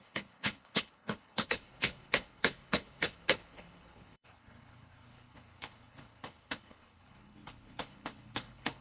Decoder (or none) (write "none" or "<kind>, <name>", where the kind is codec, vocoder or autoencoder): codec, HILCodec